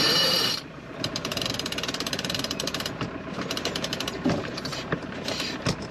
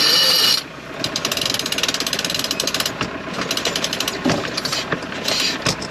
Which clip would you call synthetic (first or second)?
first